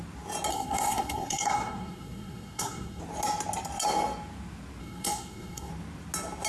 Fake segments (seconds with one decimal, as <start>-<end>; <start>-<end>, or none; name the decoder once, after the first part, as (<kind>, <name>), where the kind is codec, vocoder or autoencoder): 0.5-3.0 (codec, SNAC); 4.8-5.7